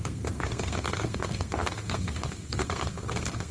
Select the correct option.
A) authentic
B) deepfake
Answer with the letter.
B